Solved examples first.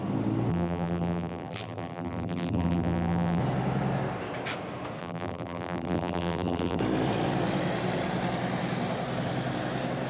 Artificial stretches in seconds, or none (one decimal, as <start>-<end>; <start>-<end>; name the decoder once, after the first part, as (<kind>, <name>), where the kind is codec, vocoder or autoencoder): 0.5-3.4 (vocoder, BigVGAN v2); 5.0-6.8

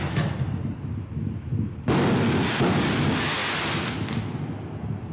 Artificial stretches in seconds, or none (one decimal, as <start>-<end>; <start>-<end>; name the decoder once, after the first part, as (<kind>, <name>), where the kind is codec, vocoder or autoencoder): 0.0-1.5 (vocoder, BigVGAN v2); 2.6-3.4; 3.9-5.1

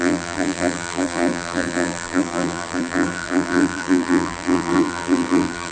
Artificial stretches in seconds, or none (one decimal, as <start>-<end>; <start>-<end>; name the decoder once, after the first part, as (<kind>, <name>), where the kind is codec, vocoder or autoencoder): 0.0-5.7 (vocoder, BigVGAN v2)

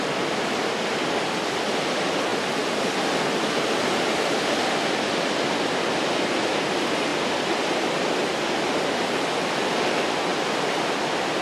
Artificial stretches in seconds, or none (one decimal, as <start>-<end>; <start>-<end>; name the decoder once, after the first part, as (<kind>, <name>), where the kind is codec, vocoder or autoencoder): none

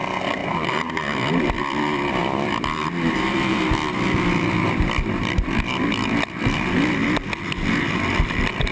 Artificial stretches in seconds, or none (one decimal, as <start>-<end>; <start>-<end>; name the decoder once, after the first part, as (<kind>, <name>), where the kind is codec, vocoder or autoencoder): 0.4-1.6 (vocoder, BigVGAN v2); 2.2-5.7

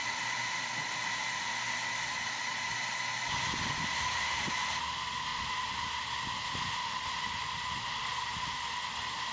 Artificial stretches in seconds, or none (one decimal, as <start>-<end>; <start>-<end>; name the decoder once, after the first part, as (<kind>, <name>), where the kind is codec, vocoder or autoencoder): none